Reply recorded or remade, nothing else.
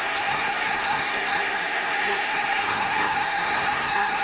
remade